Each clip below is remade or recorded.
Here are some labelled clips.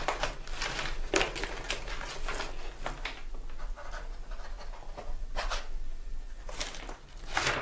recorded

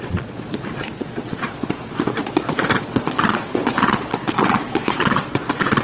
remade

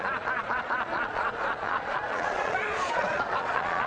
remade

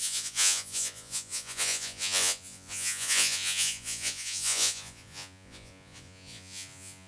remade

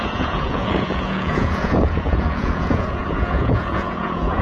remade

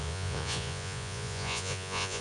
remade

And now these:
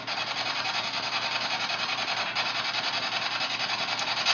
recorded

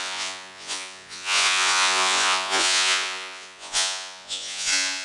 remade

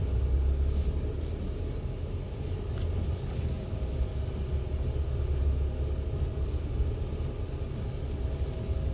recorded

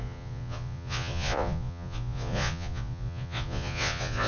remade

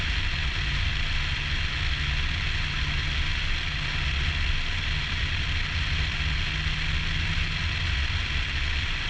recorded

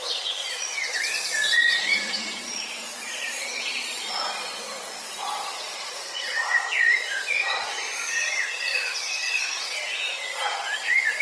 remade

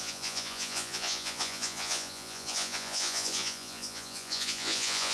remade